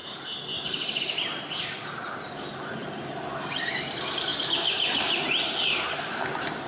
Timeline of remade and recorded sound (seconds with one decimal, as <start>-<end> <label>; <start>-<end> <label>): 0.0-2.8 remade; 2.8-3.5 recorded; 3.5-6.7 remade